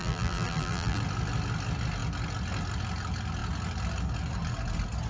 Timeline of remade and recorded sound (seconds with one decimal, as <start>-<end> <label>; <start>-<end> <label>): 0.0-1.0 remade; 1.0-5.1 recorded